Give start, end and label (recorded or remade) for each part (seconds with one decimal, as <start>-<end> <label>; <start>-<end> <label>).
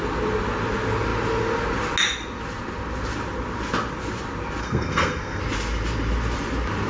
0.0-4.6 recorded; 4.6-5.4 remade; 5.4-6.9 recorded